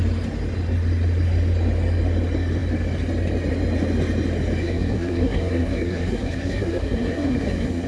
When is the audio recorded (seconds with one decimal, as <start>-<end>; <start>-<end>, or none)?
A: 0.0-4.6